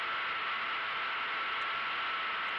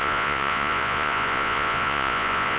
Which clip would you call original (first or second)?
first